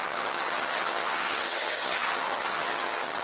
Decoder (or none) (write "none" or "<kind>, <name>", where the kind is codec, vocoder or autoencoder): vocoder, HiFi-GAN